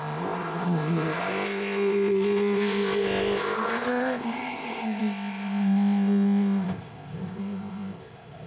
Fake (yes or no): yes